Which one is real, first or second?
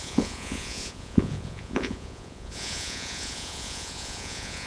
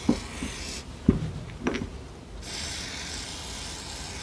second